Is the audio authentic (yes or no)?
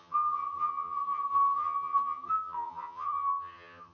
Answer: no